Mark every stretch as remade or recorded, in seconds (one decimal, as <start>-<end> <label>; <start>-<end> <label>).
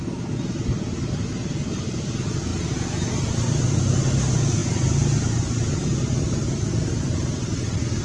0.0-8.0 recorded